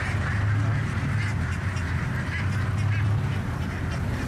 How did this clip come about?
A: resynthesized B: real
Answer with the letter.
B